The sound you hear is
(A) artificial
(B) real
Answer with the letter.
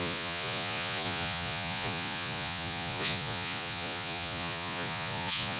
A